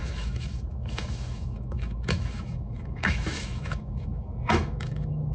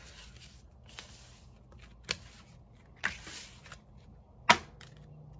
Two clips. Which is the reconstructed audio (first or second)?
first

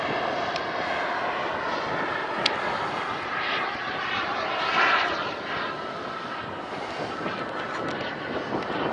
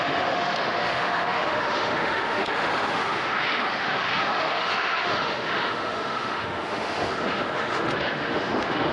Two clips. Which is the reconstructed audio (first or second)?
second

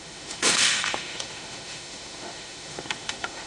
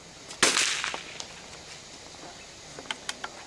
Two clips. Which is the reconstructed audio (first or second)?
first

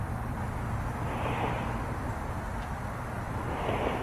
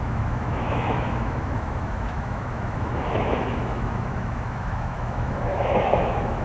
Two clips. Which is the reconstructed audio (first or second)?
second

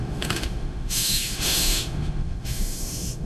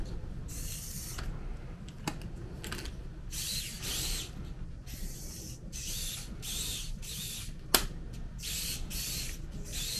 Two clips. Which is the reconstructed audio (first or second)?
first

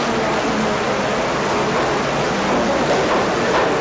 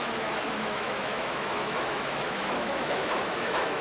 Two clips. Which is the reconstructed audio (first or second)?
second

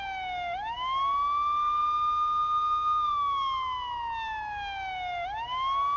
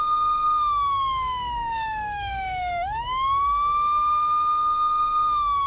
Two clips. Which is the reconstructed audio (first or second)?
second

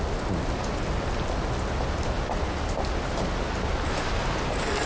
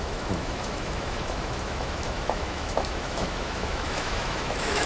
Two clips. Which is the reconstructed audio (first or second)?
second